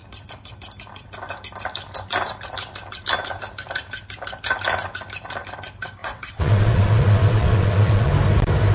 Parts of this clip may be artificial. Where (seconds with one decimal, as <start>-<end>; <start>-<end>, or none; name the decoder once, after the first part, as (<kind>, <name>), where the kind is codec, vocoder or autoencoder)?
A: 6.0-8.1 (vocoder, WaveNeXt)